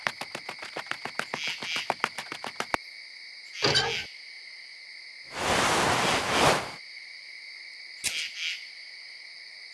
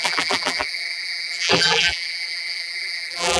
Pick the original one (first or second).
first